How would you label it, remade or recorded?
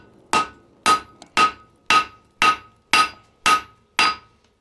recorded